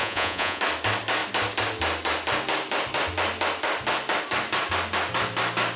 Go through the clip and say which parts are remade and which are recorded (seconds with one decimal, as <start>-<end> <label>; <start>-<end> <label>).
0.0-0.6 remade; 0.6-5.8 recorded